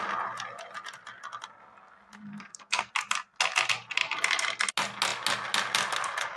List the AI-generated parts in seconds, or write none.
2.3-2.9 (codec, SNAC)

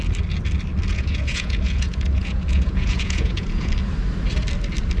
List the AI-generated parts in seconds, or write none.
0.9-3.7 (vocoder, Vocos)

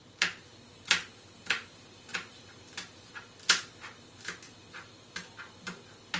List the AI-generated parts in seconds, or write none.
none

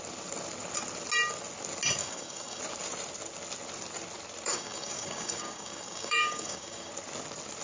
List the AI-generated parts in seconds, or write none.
2.0-2.6 (codec, DAC); 4.5-6.9